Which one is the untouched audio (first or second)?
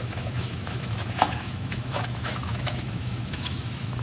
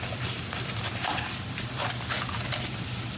second